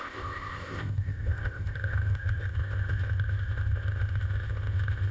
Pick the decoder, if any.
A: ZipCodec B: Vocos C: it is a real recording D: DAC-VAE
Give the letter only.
A